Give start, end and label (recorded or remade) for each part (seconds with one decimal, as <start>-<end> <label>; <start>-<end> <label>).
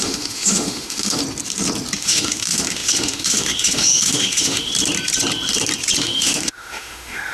0.0-1.2 remade; 1.2-2.0 recorded; 2.0-4.7 remade; 4.7-6.0 recorded; 6.0-7.3 remade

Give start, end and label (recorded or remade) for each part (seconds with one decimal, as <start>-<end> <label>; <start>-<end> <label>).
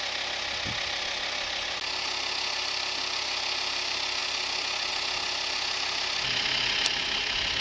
0.0-7.6 recorded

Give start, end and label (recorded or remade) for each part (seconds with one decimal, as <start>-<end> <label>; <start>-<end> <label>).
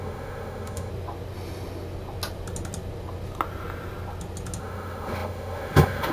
0.0-0.9 remade; 0.9-4.6 recorded; 4.6-6.1 remade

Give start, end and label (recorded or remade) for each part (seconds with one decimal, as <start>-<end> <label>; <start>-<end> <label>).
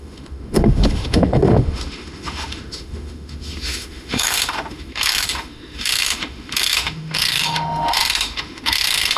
0.0-9.2 remade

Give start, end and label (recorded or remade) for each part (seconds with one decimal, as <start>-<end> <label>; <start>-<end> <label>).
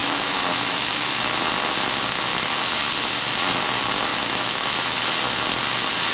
0.0-1.3 remade; 1.3-2.3 recorded; 2.3-2.9 remade; 2.9-4.1 recorded; 4.1-5.0 remade; 5.0-6.1 recorded